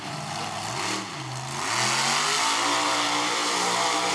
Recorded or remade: recorded